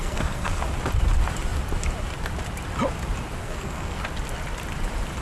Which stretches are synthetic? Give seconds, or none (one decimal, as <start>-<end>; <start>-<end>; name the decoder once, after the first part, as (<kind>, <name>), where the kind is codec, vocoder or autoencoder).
0.0-0.6 (codec, SNAC); 3.4-4.0